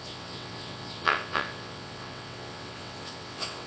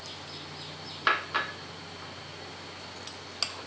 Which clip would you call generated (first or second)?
first